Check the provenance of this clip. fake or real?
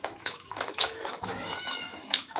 fake